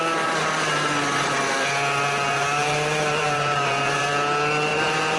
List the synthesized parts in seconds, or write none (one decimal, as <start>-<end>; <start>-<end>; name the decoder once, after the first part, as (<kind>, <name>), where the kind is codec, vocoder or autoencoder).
2.3-4.0 (vocoder, BigVGAN v2); 4.7-5.2